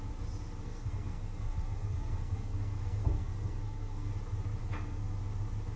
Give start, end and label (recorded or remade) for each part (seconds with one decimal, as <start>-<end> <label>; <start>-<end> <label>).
0.0-0.6 recorded; 0.6-4.1 remade; 4.1-4.6 recorded; 4.6-5.2 remade; 5.2-5.8 recorded